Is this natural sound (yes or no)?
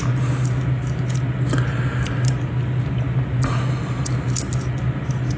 yes